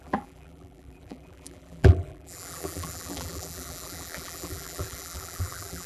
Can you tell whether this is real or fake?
fake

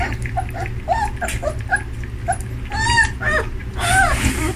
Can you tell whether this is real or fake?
real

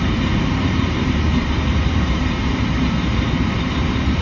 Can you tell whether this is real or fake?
fake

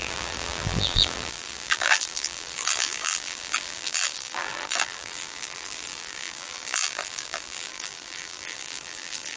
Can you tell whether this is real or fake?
fake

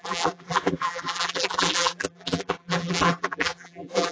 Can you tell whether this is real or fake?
fake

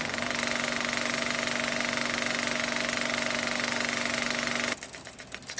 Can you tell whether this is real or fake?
real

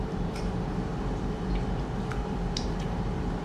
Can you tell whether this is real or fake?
fake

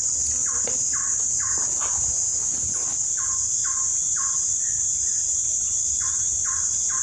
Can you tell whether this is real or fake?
real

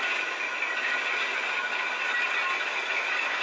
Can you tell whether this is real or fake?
real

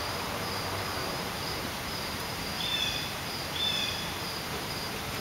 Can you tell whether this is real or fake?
fake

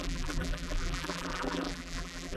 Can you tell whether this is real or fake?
fake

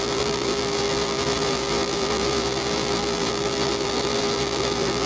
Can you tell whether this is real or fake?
fake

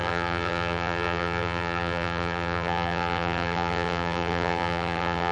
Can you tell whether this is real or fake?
fake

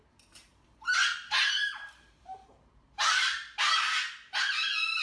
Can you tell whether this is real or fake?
fake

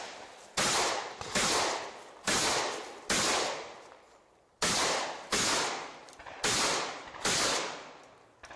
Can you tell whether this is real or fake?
real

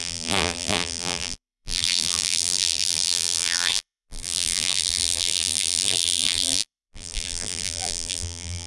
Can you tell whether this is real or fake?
fake